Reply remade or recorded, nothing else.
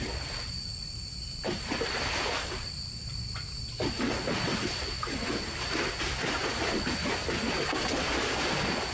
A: recorded